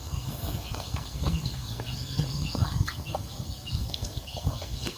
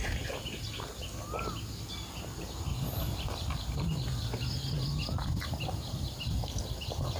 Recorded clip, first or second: second